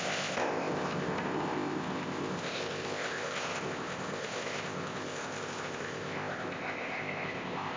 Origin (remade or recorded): remade